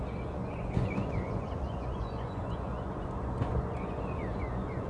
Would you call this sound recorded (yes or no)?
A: no